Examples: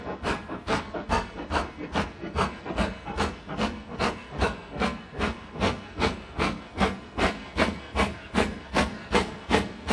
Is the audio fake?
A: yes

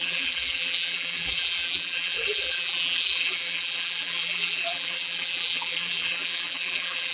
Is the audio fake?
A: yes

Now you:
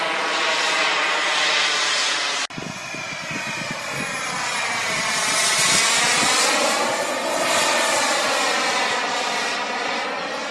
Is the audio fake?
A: no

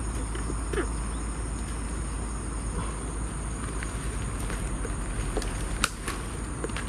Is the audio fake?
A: no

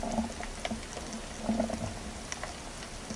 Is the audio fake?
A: no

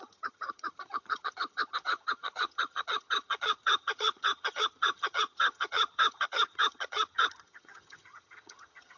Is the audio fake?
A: yes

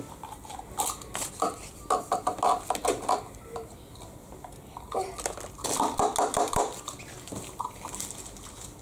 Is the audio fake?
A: no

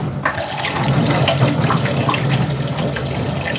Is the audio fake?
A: no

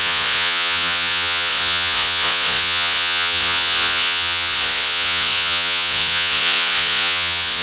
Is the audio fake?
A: yes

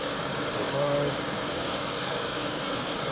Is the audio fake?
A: yes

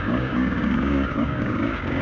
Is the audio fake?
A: yes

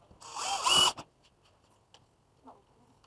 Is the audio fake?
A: no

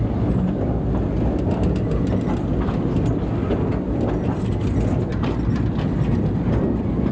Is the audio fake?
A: no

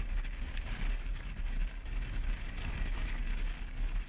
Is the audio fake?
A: yes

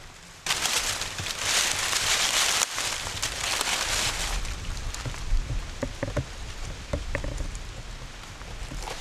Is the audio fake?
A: no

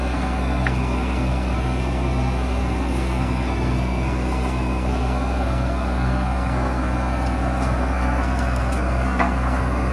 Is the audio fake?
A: yes